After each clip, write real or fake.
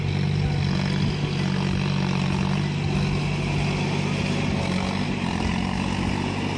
real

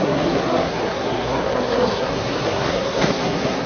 fake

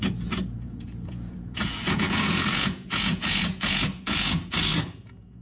fake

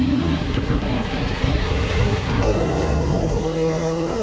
fake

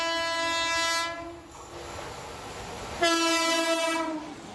real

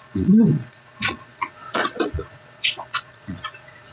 fake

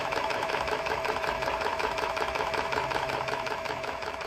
fake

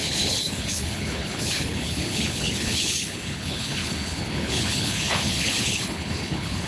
fake